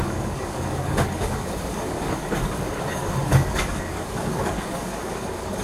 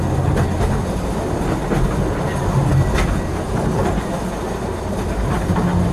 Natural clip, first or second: second